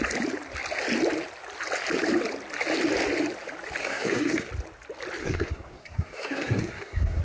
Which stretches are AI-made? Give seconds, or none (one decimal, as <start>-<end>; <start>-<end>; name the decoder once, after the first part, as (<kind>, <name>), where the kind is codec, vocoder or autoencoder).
3.8-4.5 (codec, SNAC); 5.2-7.2